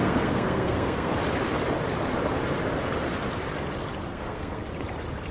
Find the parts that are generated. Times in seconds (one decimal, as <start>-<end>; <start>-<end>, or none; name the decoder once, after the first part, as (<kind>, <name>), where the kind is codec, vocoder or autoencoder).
0.0-1.1 (codec, SNAC); 4.1-4.6